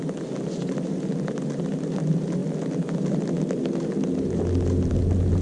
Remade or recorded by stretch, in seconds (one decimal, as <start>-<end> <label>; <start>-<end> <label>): 0.0-5.4 recorded